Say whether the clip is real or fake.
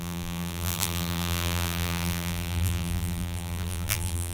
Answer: fake